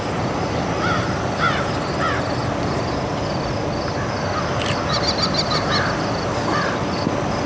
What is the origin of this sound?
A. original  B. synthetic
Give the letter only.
A